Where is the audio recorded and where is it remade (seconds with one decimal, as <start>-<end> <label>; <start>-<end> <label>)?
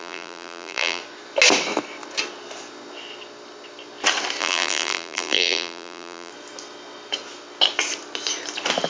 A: 0.0-1.0 remade; 1.0-4.4 recorded; 4.4-6.3 remade; 6.3-8.9 recorded